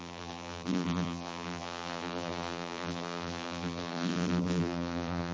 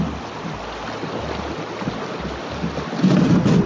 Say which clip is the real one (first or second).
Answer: second